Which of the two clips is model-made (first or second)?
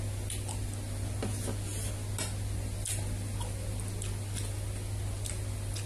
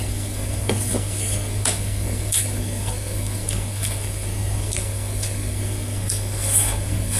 second